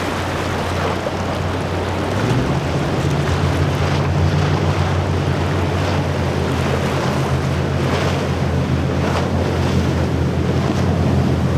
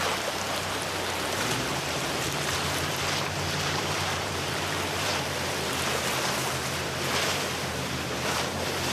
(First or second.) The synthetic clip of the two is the second